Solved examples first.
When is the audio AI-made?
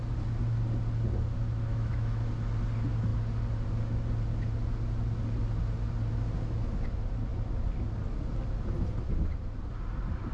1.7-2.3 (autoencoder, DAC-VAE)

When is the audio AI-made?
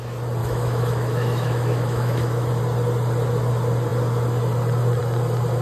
0.4-2.5 (autoencoder, DAC-VAE)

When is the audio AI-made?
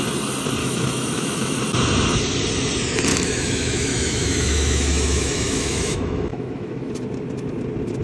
0.6-1.6 (autoencoder, DAC-VAE); 3.1-6.9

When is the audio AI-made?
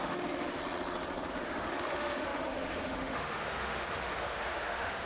0.0-0.6 (autoencoder, DAC-VAE); 1.3-5.1